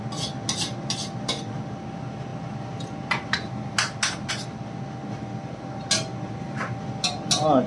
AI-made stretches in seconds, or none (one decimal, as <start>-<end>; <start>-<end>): none